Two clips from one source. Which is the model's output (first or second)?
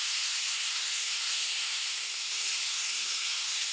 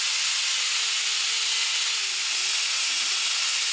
first